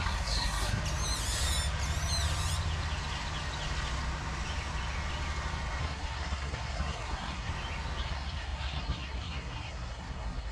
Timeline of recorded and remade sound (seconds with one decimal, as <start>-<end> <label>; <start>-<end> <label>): 0.0-0.8 remade; 0.8-5.8 recorded; 5.8-7.5 remade; 7.5-8.0 recorded; 8.0-10.5 remade